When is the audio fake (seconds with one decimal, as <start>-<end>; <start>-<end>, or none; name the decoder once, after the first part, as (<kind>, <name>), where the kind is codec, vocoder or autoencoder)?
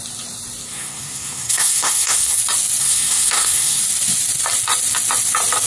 0.7-2.4 (codec, SNAC); 2.8-3.8